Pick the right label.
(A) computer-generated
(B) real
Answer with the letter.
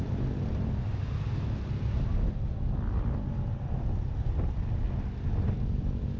B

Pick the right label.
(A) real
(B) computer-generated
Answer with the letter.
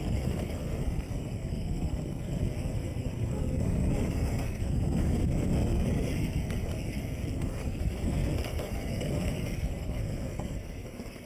B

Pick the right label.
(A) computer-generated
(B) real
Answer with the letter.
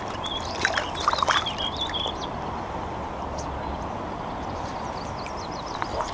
B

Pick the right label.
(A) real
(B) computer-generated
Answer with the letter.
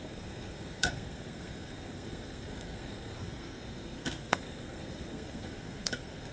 B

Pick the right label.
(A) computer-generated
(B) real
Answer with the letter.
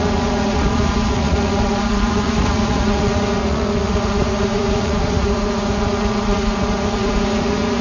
A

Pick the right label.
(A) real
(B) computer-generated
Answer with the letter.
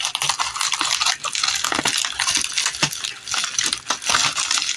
A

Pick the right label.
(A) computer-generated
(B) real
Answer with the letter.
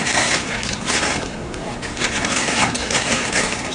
A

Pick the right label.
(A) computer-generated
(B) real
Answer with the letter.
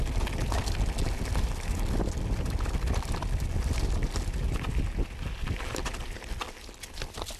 B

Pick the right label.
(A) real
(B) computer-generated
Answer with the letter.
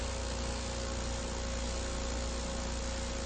A